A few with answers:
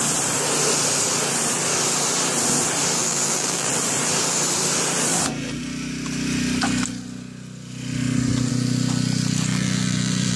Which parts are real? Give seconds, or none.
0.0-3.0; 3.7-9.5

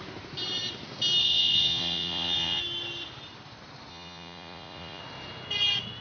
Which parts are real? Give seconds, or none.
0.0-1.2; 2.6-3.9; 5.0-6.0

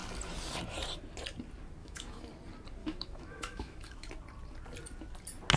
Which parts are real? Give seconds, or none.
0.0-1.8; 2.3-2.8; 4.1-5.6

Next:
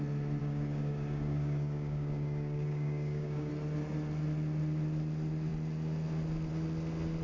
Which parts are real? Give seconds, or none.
0.0-0.4; 3.5-7.2

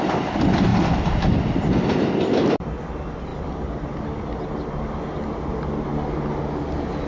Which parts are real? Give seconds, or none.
0.0-0.7; 1.3-7.1

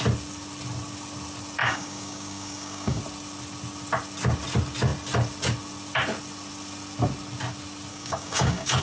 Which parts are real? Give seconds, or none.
0.0-1.6; 3.0-7.9

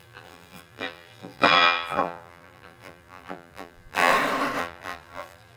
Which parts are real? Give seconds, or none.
4.1-4.6

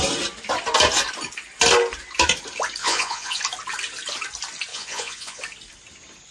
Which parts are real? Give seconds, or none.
0.0-2.8; 3.4-4.7; 5.4-6.3